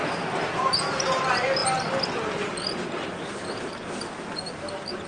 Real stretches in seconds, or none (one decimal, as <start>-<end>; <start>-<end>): 0.0-5.1